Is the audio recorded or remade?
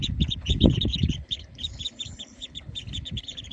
remade